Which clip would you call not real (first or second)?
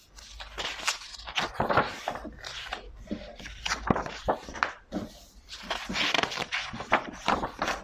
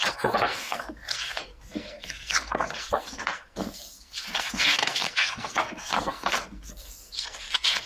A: second